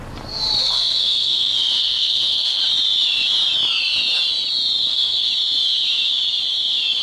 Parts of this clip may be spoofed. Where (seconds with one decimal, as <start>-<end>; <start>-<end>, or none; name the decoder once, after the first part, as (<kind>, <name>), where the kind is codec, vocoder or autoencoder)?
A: 0.6-2.6 (codec, SNAC); 4.8-5.3